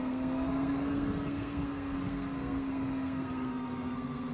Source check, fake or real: fake